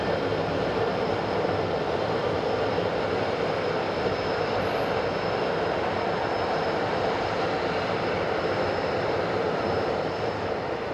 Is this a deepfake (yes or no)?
yes